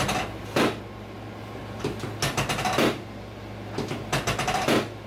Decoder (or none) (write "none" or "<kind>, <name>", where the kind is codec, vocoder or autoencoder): none